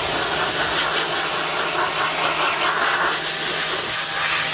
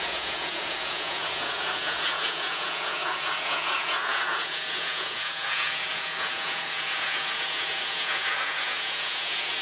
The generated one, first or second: second